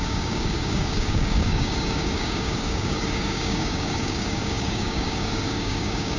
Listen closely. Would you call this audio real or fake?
fake